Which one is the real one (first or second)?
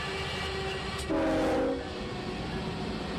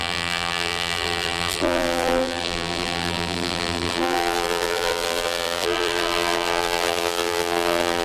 first